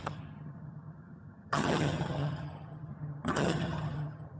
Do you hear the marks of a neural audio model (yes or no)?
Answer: yes